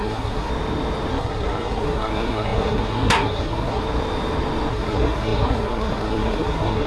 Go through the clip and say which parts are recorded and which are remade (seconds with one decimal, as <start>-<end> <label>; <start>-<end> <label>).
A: 0.0-0.5 remade; 0.5-1.1 recorded; 1.1-3.8 remade; 3.8-4.7 recorded; 4.7-6.9 remade